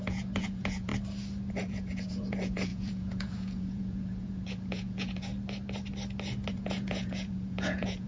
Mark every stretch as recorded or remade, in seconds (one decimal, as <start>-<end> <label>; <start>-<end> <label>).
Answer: 0.0-0.9 remade; 0.9-1.5 recorded; 1.5-5.3 remade; 5.3-6.5 recorded; 6.5-8.1 remade